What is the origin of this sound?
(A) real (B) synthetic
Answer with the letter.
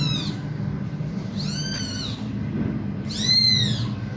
A